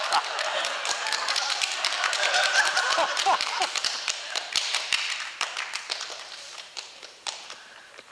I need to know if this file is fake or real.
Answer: fake